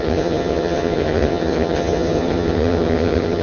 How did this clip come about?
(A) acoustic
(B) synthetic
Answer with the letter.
B